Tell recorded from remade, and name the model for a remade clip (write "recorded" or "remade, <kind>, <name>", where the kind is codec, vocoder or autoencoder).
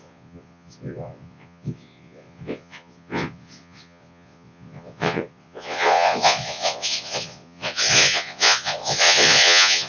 remade, vocoder, Vocos